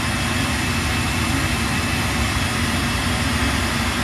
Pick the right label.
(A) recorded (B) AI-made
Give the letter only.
A